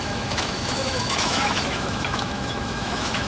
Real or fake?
fake